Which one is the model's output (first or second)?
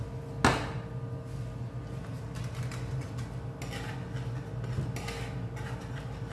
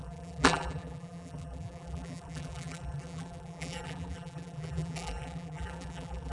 second